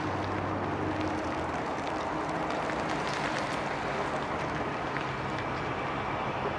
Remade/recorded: recorded